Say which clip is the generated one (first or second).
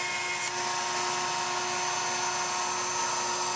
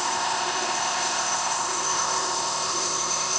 second